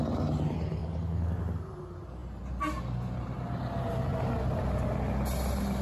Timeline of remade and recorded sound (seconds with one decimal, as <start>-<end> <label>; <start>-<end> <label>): 0.0-0.8 recorded; 0.8-1.4 remade; 1.4-5.8 recorded

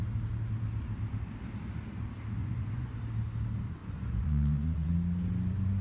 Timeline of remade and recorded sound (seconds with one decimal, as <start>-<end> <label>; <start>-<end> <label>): 0.0-2.4 recorded; 2.4-3.0 remade; 3.0-3.8 recorded; 3.8-4.9 remade; 4.9-5.8 recorded

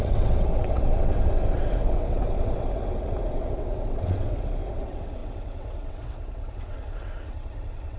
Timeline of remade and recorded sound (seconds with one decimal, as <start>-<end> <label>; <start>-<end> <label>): 0.0-8.0 remade

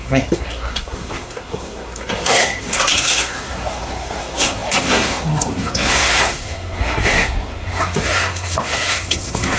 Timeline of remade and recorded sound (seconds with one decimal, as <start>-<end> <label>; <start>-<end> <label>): 0.0-9.6 remade